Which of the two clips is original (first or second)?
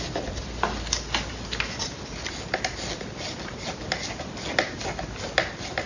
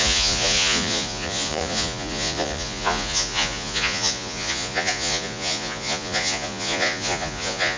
first